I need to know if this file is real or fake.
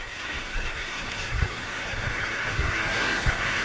fake